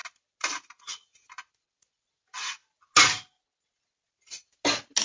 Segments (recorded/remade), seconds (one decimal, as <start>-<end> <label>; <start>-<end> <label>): 0.0-5.0 recorded